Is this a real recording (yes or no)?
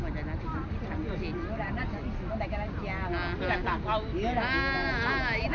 yes